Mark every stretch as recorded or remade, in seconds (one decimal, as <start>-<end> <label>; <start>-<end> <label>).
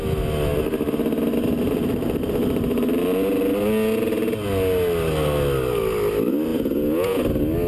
0.0-6.5 recorded; 6.5-7.2 remade; 7.2-7.7 recorded